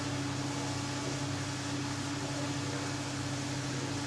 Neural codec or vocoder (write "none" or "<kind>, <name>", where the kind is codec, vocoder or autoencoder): none